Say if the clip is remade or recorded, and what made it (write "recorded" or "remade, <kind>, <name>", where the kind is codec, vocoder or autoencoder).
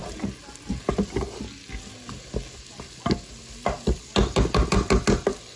recorded